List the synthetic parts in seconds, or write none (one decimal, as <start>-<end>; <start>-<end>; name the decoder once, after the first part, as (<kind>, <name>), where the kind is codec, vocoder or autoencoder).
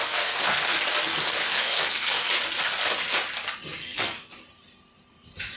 0.0-0.8 (codec, SNAC); 1.4-2.3; 3.8-4.3